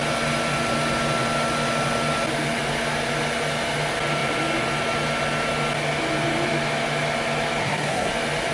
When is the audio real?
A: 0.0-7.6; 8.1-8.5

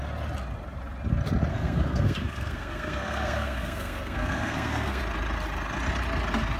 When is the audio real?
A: 0.0-1.5; 5.0-6.6

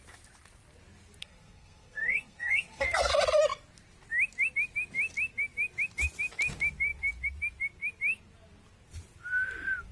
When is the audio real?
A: 0.0-1.2; 3.1-9.9